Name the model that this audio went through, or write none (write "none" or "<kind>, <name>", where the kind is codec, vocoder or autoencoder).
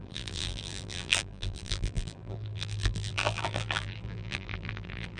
vocoder, BigVGAN v2